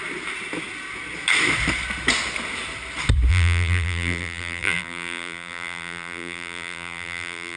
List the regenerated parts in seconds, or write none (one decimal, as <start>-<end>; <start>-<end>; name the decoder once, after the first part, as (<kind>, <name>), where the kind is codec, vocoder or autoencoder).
3.3-7.6 (vocoder, BigVGAN v2)